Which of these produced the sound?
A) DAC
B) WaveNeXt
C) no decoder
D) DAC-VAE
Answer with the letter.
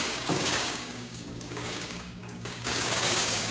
A